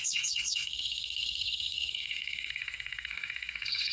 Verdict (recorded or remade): remade